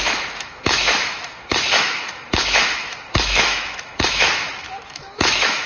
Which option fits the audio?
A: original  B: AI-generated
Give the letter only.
B